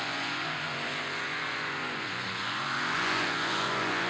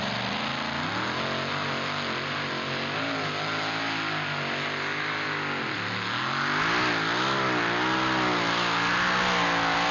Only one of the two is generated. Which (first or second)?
first